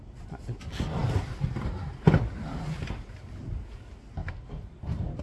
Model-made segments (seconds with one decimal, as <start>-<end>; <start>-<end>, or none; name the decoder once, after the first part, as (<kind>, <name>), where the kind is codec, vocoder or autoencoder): none